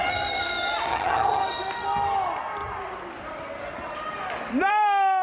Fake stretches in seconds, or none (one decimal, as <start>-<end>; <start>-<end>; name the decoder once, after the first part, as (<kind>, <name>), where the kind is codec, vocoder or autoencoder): 0.9-1.4 (vocoder, HiFi-GAN)